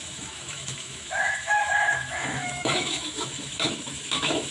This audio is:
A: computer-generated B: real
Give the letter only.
A